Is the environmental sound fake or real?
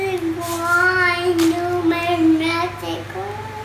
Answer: real